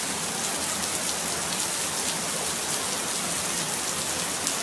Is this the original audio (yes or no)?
yes